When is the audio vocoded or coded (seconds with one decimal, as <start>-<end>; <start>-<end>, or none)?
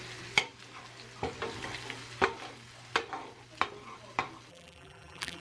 4.5-5.4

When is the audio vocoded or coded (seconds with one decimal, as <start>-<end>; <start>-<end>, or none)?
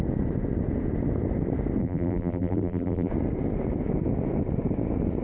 1.8-3.1